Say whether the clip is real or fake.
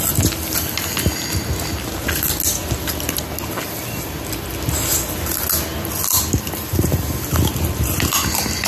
real